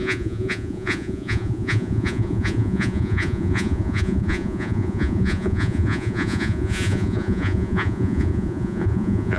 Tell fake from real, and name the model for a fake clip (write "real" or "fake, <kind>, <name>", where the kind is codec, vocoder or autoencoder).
fake, vocoder, Vocos